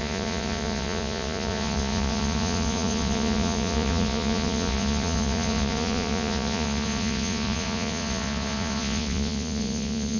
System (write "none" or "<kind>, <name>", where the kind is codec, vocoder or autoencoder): vocoder, Vocos